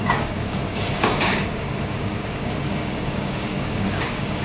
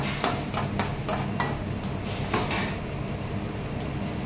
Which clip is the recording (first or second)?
second